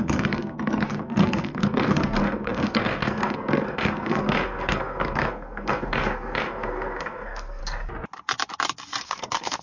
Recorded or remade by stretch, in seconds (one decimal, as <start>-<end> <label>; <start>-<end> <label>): 0.0-7.6 remade; 7.6-9.0 recorded; 9.0-9.6 remade

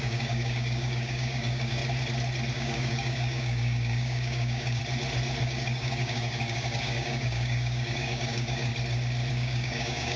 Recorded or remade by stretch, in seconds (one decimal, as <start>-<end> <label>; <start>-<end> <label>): 0.0-1.8 remade; 1.8-2.5 recorded; 2.5-4.8 remade; 4.8-5.4 recorded; 5.4-8.7 remade; 8.7-9.3 recorded; 9.3-10.2 remade

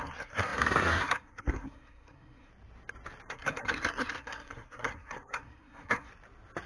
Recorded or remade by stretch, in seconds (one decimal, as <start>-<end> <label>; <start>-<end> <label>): 0.0-2.5 remade; 2.5-3.3 recorded; 3.3-6.1 remade; 6.1-6.7 recorded

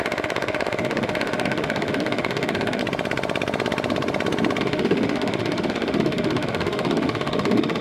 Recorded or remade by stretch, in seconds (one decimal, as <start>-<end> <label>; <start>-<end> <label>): 0.0-2.8 remade; 2.8-4.6 recorded; 4.6-7.8 remade

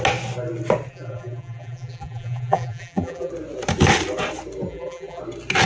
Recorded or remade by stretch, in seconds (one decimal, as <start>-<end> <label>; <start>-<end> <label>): 0.0-0.9 recorded; 0.9-3.3 remade; 3.3-4.7 recorded; 4.7-5.2 remade; 5.2-5.7 recorded

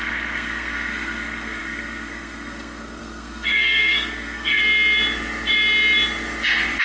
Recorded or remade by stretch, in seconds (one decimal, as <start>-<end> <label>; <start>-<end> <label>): 0.0-4.6 remade; 4.6-6.8 recorded